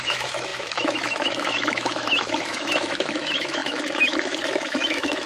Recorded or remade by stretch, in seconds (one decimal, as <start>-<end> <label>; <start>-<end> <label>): 0.0-5.3 remade